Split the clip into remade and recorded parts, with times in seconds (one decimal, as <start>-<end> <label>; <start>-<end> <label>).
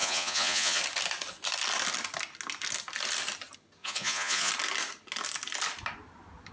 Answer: 0.0-0.8 remade; 0.8-3.8 recorded; 3.8-4.5 remade; 4.5-6.5 recorded